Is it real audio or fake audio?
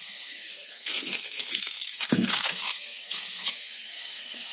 fake